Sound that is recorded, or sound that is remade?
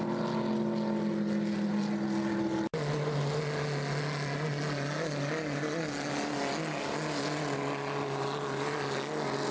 recorded